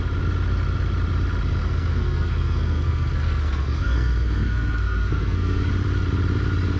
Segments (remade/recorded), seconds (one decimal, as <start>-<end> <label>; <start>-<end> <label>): 0.0-1.6 recorded; 1.6-5.7 remade; 5.7-6.8 recorded